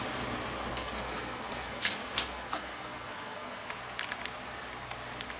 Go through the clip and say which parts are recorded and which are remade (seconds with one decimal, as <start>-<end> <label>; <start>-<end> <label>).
0.0-0.7 recorded; 0.7-3.7 remade; 3.7-5.4 recorded